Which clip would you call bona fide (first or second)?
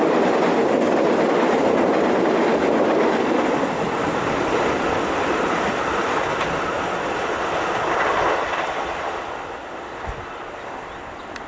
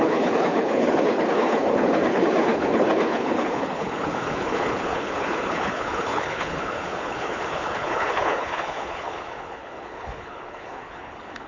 first